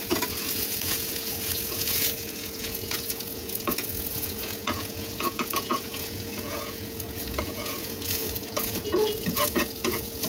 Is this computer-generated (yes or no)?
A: yes